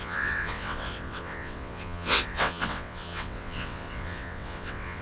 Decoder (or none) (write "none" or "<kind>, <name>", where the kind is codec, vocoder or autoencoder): vocoder, WaveNeXt